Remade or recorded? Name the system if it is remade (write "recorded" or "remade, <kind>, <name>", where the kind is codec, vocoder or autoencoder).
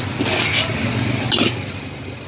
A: recorded